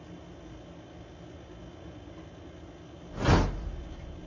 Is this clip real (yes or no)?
yes